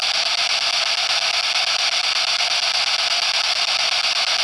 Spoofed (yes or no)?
no